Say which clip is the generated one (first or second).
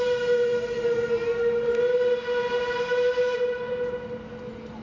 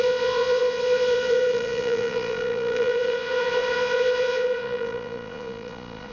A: second